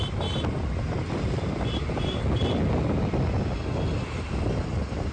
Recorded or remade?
recorded